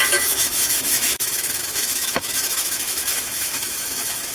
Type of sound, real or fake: fake